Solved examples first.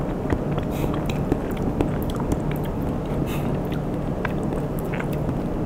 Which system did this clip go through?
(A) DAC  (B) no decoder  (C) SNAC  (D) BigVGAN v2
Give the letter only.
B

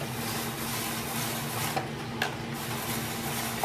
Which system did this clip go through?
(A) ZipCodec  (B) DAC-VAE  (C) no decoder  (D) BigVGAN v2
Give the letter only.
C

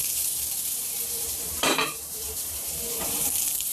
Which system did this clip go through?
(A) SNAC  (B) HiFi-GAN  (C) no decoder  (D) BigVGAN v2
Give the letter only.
D